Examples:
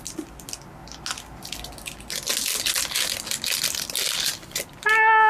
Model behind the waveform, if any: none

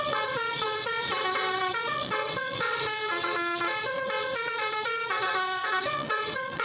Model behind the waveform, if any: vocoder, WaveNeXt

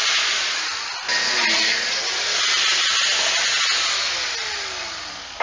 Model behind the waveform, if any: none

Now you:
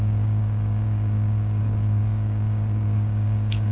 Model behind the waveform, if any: codec, DAC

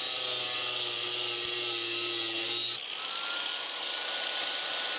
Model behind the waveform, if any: none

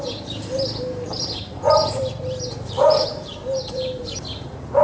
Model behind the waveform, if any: vocoder, BigVGAN v2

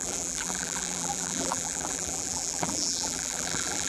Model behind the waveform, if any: vocoder, BigVGAN v2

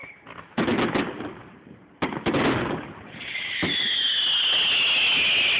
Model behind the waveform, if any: none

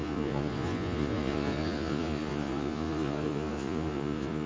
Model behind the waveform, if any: vocoder, Vocos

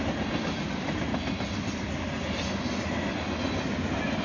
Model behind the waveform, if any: none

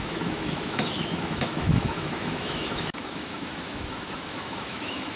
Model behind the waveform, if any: autoencoder, DAC-VAE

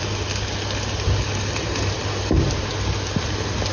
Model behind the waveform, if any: none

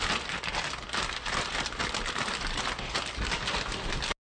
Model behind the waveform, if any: none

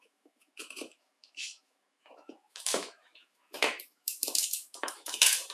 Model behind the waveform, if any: autoencoder, DAC-VAE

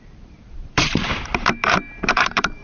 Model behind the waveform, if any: vocoder, BigVGAN v2